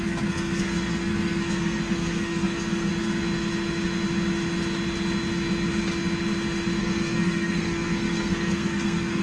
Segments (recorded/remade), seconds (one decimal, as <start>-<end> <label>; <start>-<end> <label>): 0.0-2.9 remade; 2.9-6.8 recorded; 6.8-9.2 remade